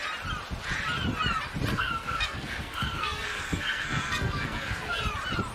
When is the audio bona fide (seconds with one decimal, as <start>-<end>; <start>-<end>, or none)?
0.0-1.7; 5.0-5.5